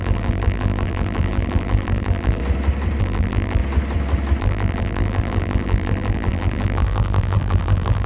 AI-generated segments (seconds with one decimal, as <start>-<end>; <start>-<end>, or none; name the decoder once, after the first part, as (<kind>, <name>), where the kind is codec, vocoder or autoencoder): 0.0-2.4 (vocoder, BigVGAN v2); 3.0-3.6; 4.4-8.1